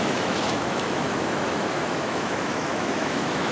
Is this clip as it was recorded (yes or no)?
no